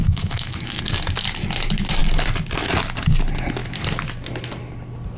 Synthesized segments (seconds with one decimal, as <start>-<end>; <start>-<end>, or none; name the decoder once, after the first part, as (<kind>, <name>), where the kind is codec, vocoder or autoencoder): 0.0-0.8 (autoencoder, DAC-VAE)